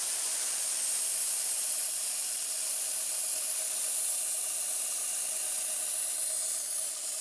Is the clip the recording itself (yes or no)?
yes